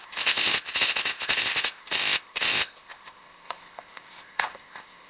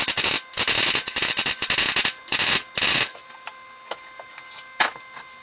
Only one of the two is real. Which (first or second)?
second